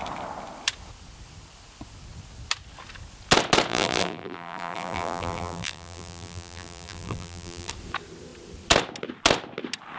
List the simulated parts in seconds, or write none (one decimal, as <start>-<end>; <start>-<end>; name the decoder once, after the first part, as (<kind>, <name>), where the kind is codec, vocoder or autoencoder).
3.7-7.7 (vocoder, BigVGAN v2)